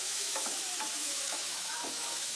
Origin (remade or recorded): remade